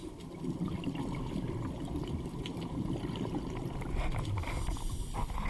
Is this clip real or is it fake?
real